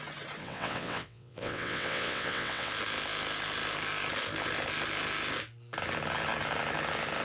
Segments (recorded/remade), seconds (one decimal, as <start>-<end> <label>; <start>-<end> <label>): 0.0-0.4 recorded; 0.4-2.7 remade; 2.7-7.2 recorded